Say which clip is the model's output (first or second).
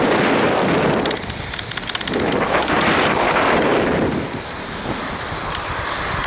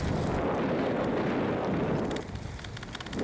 first